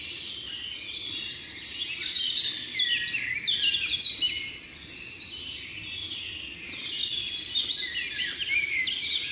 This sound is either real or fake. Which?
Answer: real